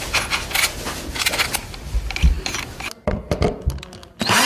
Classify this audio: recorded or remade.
recorded